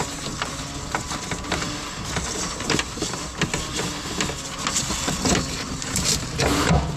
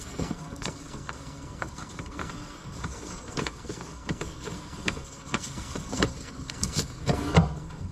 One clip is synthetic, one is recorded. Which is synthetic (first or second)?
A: second